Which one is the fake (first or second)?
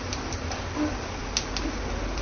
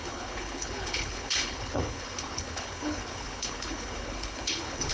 second